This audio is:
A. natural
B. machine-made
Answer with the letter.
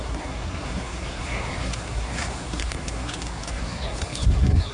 B